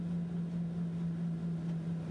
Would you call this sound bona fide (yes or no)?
yes